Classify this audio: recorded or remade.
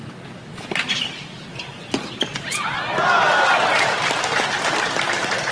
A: recorded